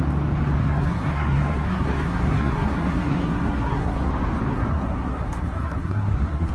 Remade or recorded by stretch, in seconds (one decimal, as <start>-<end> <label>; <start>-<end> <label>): 0.0-0.6 recorded; 0.6-4.1 remade; 4.1-4.5 recorded; 4.5-6.5 remade